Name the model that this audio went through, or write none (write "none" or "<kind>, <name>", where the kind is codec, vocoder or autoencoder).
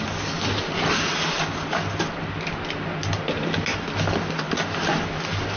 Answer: none